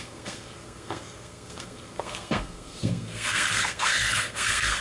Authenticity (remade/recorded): remade